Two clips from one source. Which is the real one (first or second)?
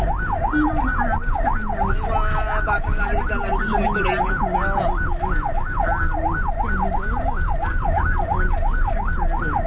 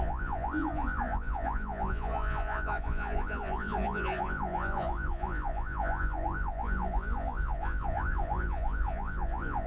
first